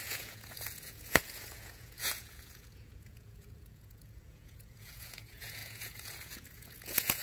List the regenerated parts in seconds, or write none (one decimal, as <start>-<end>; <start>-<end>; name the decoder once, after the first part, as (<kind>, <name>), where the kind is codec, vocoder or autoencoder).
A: 0.0-7.2 (vocoder, Vocos)